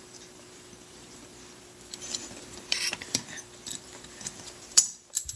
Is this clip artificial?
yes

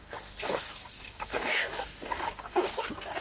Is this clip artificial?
yes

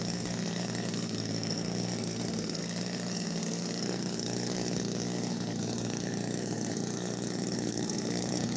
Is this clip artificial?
yes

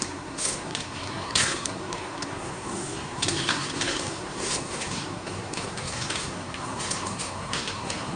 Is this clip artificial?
yes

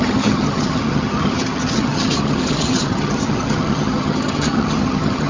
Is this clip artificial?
yes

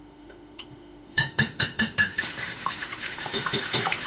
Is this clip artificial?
yes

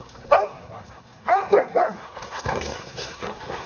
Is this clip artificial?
yes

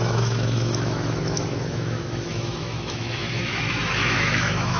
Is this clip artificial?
yes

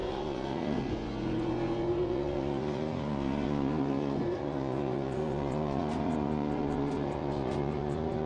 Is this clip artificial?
yes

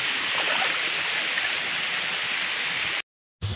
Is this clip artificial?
no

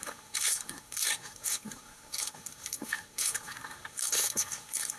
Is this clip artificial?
yes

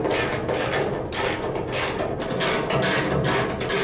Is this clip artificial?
no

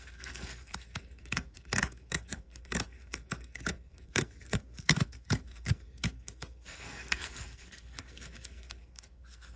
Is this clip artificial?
yes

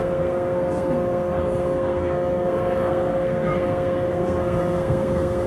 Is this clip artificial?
yes